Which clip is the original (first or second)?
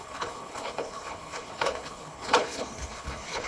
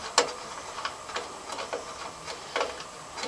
second